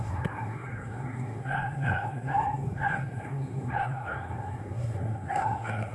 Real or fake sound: fake